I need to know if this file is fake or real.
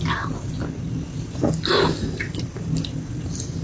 real